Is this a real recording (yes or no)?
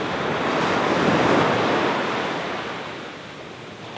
yes